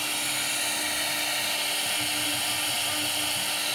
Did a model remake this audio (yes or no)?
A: no